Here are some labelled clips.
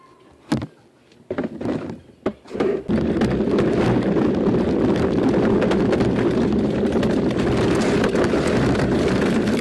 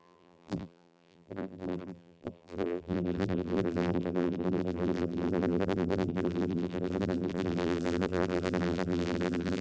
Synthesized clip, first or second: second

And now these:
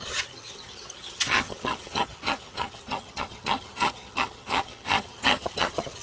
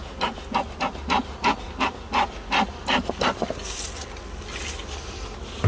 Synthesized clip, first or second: first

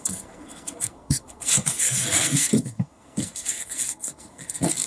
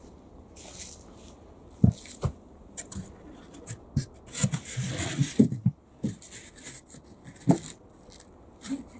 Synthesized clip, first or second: first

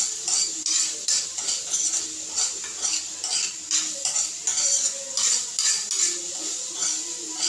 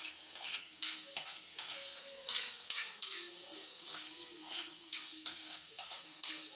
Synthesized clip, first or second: second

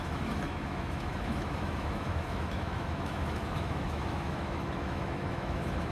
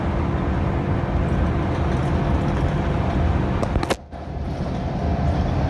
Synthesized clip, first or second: first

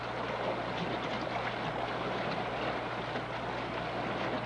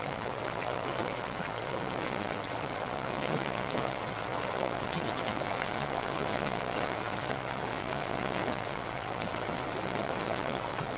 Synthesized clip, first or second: second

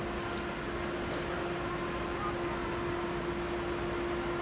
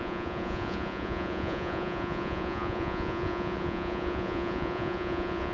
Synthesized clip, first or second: second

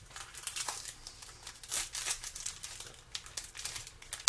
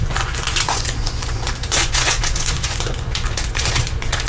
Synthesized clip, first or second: second